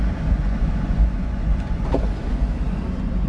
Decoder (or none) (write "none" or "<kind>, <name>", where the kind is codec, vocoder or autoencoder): vocoder, Vocos